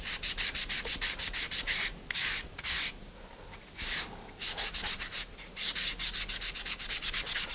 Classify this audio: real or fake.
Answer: real